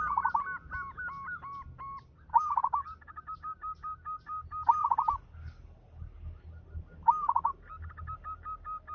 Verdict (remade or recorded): recorded